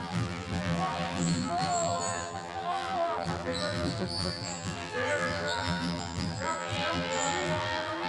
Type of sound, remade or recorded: remade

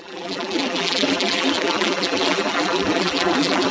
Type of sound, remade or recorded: remade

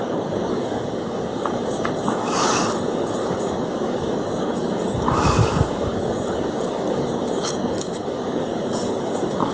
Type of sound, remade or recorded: remade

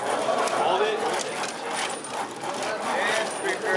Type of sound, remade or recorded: recorded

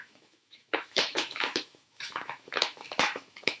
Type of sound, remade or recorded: remade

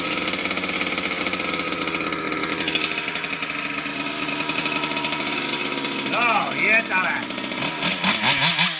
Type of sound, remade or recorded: recorded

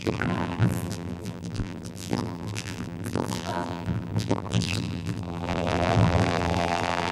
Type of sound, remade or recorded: remade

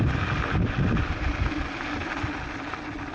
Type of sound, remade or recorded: recorded